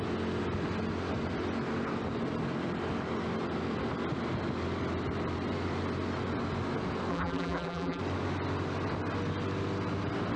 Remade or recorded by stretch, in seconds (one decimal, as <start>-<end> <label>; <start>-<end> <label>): 0.0-7.1 recorded; 7.1-8.0 remade; 8.0-10.4 recorded